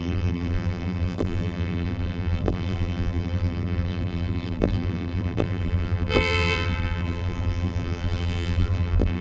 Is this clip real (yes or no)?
no